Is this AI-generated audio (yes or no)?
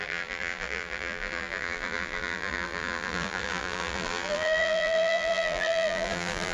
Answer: yes